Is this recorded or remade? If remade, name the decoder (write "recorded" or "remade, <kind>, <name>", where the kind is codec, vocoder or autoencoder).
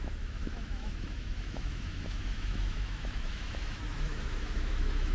remade, autoencoder, DAC-VAE